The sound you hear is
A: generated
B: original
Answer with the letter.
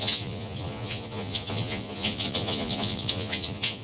A